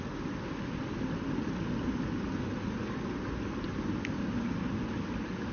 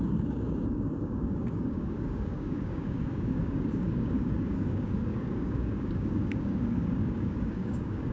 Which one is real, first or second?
first